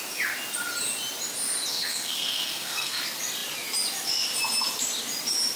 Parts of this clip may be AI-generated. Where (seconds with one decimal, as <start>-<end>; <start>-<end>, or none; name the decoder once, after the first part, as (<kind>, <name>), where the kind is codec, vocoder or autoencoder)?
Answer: 1.7-3.0 (codec, SNAC)